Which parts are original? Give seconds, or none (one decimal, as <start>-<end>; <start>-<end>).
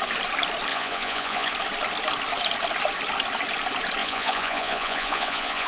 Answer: 0.0-0.7; 1.5-4.0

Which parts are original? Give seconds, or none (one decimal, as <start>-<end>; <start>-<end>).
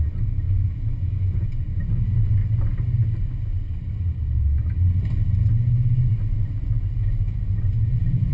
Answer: 2.4-6.5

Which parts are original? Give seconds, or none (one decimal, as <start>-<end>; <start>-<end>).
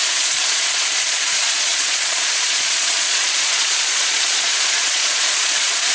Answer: none